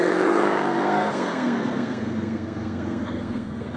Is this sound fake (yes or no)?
yes